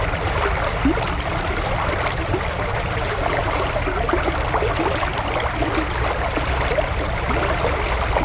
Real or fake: real